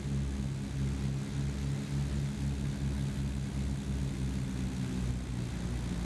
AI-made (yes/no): no